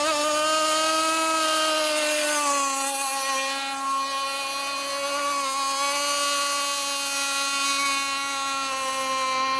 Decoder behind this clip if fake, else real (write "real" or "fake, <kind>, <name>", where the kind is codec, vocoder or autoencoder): real